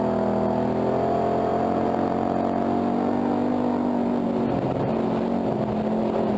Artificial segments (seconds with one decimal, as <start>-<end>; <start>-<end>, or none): none